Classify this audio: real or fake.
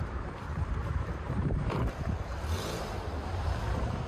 fake